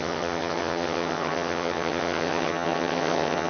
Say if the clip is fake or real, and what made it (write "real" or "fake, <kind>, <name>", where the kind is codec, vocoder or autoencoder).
fake, vocoder, HiFi-GAN